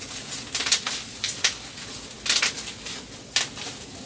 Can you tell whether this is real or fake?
real